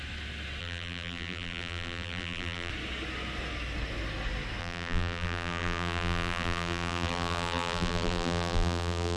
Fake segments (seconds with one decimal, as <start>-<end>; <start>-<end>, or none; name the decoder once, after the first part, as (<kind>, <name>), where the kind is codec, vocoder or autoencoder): 0.6-2.7 (vocoder, BigVGAN v2); 4.6-9.2